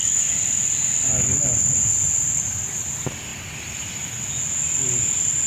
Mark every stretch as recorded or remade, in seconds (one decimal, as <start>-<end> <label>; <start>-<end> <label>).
0.0-0.6 remade; 0.6-5.5 recorded